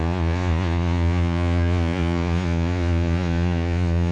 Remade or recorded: remade